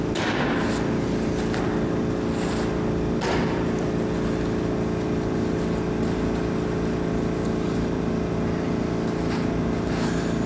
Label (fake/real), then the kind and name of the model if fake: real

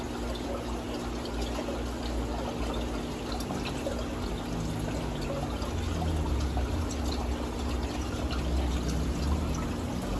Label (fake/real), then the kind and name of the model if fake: real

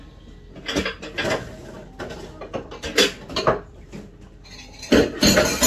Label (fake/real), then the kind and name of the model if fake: real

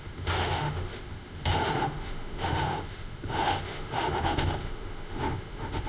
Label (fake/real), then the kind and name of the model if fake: fake, autoencoder, DAC-VAE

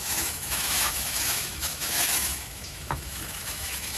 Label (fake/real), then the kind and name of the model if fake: fake, autoencoder, DAC-VAE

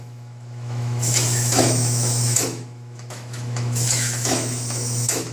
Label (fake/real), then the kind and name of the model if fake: fake, autoencoder, DAC-VAE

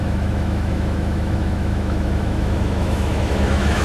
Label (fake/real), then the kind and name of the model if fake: fake, autoencoder, DAC-VAE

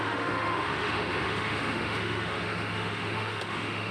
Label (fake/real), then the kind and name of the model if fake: fake, autoencoder, DAC-VAE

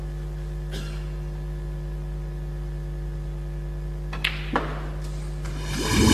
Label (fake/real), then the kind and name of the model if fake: real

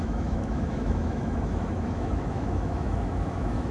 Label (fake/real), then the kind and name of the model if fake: fake, autoencoder, DAC-VAE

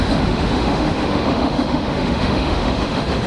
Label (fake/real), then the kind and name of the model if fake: fake, autoencoder, DAC-VAE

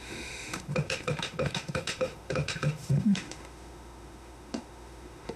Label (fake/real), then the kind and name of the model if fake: fake, autoencoder, DAC-VAE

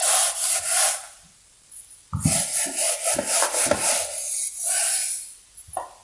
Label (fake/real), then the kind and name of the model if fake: real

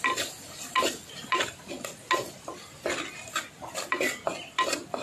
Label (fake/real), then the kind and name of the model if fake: real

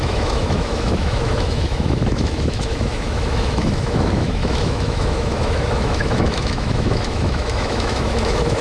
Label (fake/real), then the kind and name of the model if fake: fake, autoencoder, DAC-VAE